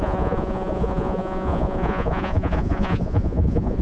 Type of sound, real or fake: fake